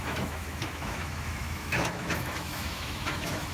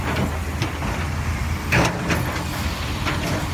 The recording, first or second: second